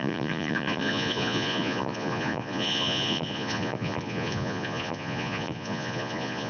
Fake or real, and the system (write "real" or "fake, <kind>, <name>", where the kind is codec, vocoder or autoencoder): fake, vocoder, Vocos